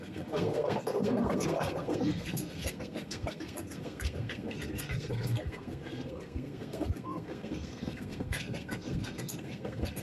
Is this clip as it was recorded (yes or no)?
no